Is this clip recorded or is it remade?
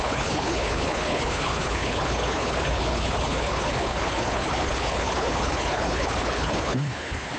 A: remade